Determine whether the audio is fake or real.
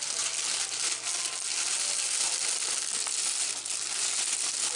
real